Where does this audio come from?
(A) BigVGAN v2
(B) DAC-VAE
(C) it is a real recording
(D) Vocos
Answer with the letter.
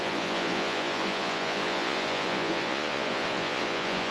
D